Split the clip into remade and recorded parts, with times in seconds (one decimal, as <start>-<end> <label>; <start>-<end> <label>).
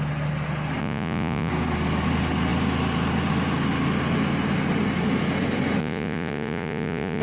0.0-0.8 recorded; 0.8-1.5 remade; 1.5-5.8 recorded; 5.8-7.2 remade